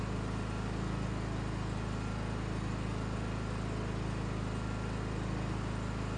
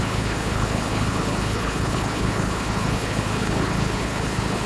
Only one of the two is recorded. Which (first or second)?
first